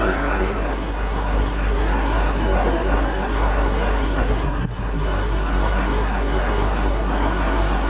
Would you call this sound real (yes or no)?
no